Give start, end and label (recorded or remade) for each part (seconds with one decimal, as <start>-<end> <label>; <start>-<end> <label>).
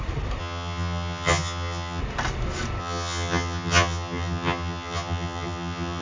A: 0.0-0.4 recorded; 0.4-2.0 remade; 2.0-2.8 recorded; 2.8-6.0 remade